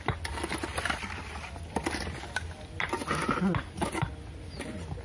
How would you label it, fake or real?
real